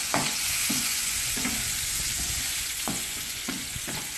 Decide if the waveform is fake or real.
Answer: fake